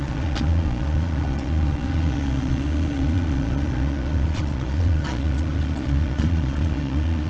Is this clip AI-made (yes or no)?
yes